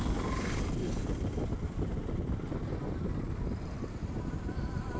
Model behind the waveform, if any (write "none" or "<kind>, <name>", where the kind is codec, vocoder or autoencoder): none